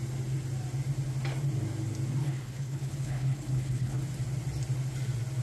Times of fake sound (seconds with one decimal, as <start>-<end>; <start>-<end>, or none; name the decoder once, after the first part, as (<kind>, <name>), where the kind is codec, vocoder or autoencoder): 2.2-4.0 (codec, HILCodec)